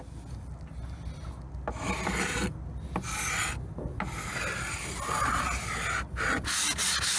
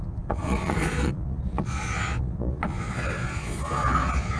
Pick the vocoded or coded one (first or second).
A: second